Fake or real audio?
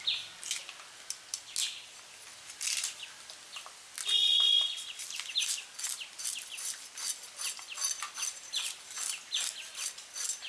real